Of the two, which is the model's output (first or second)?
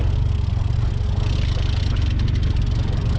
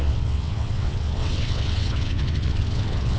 second